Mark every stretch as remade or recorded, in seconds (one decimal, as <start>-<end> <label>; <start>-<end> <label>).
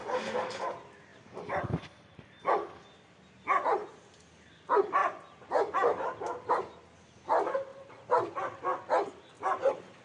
0.0-0.6 remade; 0.6-1.1 recorded; 1.1-2.5 remade; 2.5-5.0 recorded; 5.0-6.5 remade; 6.5-7.7 recorded; 7.7-8.6 remade; 8.6-10.0 recorded